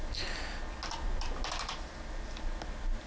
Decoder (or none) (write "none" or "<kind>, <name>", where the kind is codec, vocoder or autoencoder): none